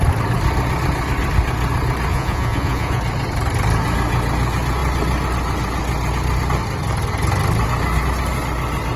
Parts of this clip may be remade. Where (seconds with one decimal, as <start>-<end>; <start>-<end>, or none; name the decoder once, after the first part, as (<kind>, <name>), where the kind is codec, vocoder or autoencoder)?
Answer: 2.1-3.0 (vocoder, Vocos)